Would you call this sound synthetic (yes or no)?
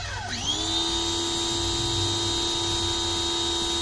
no